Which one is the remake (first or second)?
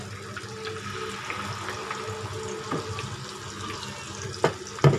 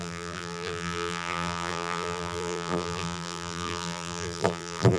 second